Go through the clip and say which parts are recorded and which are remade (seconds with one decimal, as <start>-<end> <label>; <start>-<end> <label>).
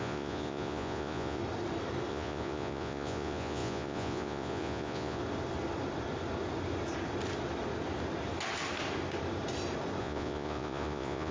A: 0.0-1.4 remade; 1.4-2.1 recorded; 2.1-5.2 remade; 5.2-10.0 recorded; 10.0-11.3 remade